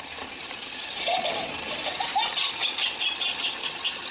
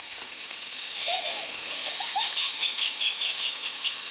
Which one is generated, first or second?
second